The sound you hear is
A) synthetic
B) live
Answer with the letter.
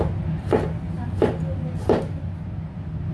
B